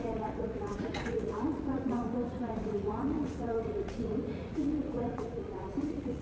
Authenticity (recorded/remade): remade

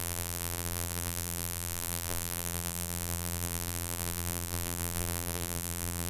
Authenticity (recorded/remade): remade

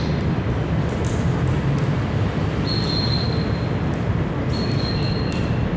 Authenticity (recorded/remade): recorded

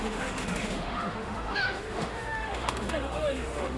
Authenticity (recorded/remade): remade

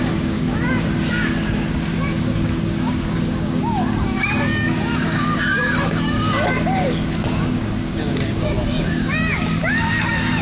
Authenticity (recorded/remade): remade